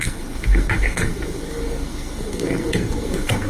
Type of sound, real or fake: fake